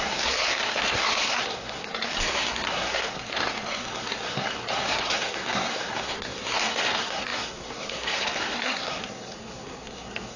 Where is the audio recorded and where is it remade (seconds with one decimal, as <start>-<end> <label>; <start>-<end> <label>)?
0.0-10.4 remade